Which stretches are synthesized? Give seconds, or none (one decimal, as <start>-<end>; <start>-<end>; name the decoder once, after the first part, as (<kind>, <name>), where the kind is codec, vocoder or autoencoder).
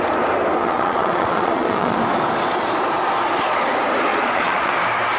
0.6-2.0 (vocoder, Vocos); 4.1-4.7